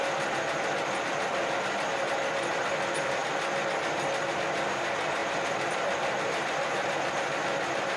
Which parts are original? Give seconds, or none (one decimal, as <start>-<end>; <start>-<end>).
0.0-5.2; 7.1-8.0

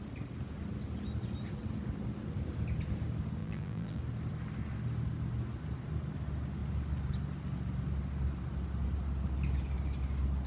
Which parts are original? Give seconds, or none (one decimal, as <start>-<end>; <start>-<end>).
0.0-3.4; 4.0-10.5

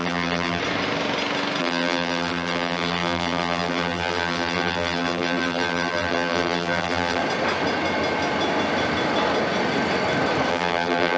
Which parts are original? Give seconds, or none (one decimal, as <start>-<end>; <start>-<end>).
0.6-1.6; 7.2-10.5

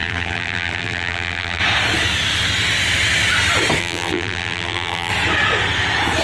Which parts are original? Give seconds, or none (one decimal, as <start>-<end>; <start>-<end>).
1.6-3.8; 5.1-6.2

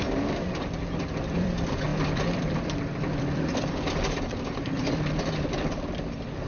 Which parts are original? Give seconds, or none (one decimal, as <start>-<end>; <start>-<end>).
none

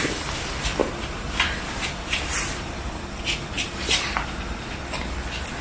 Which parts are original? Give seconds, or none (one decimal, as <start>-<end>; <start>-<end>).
0.0-0.8; 2.7-5.6